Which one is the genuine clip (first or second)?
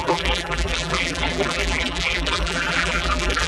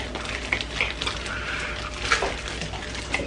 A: second